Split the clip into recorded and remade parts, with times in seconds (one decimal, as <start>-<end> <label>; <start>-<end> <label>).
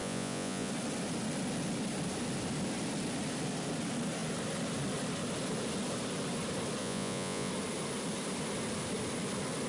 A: 0.0-0.7 remade; 0.7-6.8 recorded; 6.8-7.5 remade; 7.5-9.7 recorded